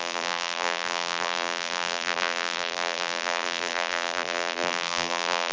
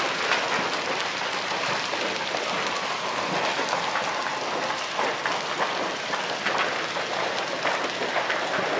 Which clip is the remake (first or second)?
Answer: first